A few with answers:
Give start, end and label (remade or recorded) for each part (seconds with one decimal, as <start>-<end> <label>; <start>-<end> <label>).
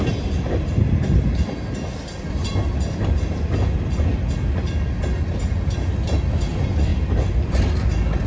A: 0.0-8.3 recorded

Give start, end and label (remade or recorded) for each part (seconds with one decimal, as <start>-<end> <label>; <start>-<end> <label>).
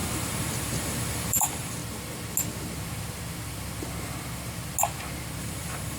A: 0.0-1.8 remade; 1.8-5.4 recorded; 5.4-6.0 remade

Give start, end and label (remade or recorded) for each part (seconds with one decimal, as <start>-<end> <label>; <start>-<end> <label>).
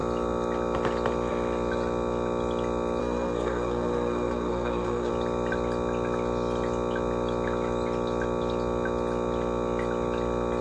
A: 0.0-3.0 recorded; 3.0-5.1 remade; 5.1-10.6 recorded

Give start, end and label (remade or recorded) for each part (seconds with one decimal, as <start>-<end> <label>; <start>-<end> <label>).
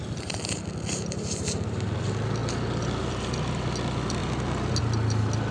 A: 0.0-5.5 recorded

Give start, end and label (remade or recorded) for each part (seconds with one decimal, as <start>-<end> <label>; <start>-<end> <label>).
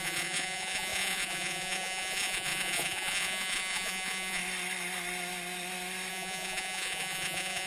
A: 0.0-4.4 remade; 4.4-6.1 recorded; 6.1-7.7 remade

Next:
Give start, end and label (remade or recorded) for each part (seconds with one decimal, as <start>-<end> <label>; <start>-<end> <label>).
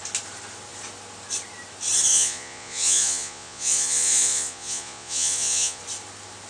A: 0.0-2.1 recorded; 2.1-5.8 remade; 5.8-6.5 recorded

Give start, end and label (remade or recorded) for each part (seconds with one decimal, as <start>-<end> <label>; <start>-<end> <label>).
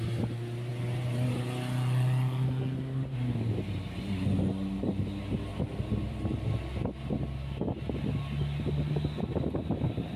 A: 0.0-5.5 recorded; 5.5-6.2 remade; 6.2-10.2 recorded